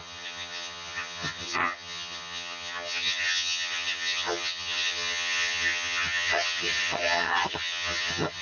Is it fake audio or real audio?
fake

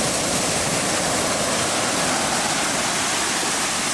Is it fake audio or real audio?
fake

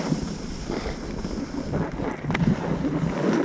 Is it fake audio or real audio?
real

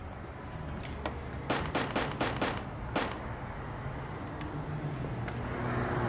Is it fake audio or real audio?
real